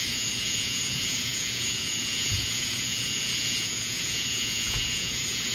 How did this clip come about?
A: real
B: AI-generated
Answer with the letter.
B